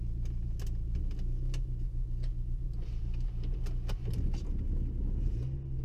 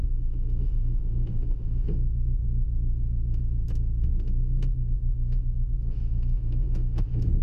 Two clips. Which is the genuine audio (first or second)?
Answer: first